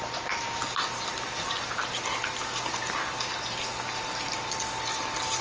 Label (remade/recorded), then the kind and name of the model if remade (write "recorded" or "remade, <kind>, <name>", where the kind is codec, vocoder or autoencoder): recorded